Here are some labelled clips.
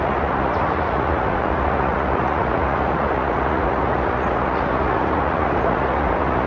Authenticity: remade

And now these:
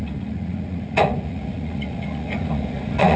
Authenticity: remade